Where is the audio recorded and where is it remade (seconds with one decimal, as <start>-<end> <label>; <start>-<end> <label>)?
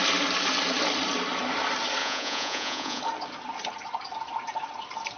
0.0-2.0 recorded; 2.0-3.0 remade; 3.0-5.2 recorded